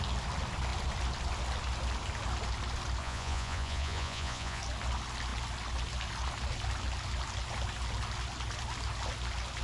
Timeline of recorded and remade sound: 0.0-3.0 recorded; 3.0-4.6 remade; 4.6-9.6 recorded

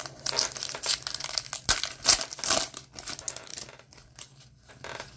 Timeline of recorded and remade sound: 0.0-5.2 recorded

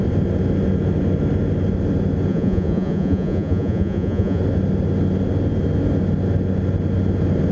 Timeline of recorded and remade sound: 0.0-2.3 recorded; 2.3-4.4 remade; 4.4-7.5 recorded

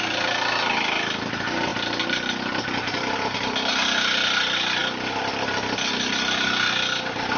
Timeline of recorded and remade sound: 0.0-7.4 recorded

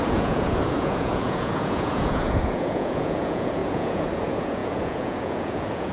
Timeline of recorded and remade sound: 0.0-5.9 remade

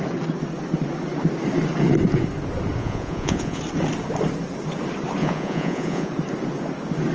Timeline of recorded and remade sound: 0.0-2.8 recorded; 2.8-3.6 remade; 3.6-5.2 recorded; 5.2-6.1 remade; 6.1-7.1 recorded

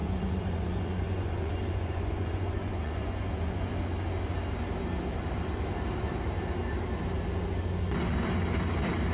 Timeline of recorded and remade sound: 0.0-3.7 remade; 3.7-9.1 recorded

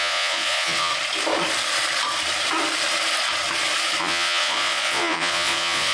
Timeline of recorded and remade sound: 0.0-0.9 remade; 0.9-4.0 recorded; 4.0-5.9 remade